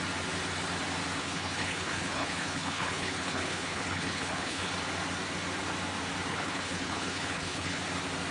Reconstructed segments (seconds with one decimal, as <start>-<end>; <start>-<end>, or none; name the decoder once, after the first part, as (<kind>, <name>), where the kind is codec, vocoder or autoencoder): 1.2-4.7 (codec, HILCodec); 6.3-7.8

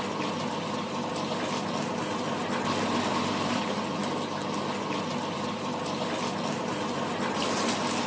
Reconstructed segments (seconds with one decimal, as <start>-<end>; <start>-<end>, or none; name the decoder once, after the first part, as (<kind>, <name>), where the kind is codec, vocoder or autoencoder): 0.0-4.0 (vocoder, BigVGAN v2); 5.3-8.1

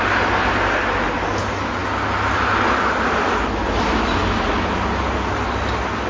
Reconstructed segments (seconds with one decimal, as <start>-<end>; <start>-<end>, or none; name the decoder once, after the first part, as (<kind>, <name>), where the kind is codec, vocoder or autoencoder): none

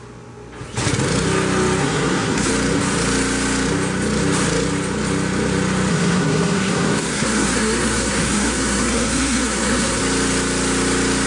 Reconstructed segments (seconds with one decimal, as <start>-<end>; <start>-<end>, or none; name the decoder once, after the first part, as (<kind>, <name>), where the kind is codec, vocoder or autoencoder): 1.8-2.5 (codec, SNAC); 5.9-10.0

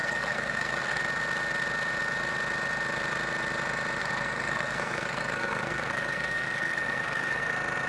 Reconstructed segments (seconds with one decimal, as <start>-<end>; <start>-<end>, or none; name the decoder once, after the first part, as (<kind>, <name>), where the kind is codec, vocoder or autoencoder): 0.0-1.0 (codec, SNAC); 4.0-7.5